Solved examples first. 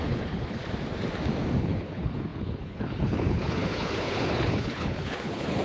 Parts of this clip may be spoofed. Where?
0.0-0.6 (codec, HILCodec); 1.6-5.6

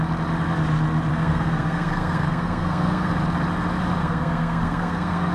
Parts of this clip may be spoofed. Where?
1.1-3.1 (codec, SNAC); 4.0-5.3

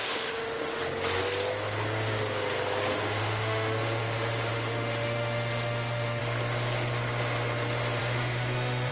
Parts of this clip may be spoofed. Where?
0.0-0.8 (autoencoder, DAC-VAE); 2.9-6.2; 8.0-8.9

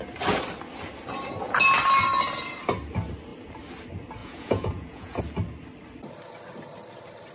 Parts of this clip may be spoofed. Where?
4.2-5.2 (vocoder, Vocos)

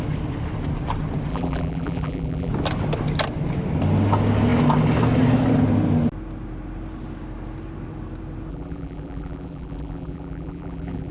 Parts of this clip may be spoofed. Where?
1.3-2.5 (vocoder, BigVGAN v2); 8.5-11.1

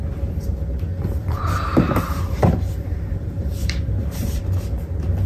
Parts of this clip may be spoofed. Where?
1.2-4.4 (vocoder, BigVGAN v2)